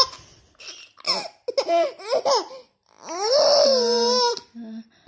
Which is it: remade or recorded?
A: recorded